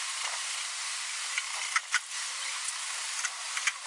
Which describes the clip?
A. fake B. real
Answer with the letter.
B